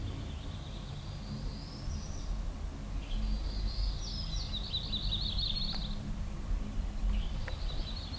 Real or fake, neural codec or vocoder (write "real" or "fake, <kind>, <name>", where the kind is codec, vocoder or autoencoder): real